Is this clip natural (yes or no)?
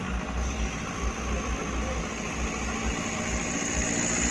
yes